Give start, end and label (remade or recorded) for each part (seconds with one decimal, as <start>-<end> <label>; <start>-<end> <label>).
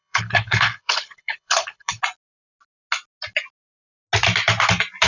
0.0-2.0 remade; 2.0-5.1 recorded